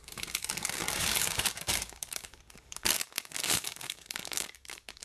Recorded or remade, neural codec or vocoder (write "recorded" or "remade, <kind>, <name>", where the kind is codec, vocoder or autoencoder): remade, codec, DAC